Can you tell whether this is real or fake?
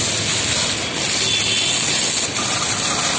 real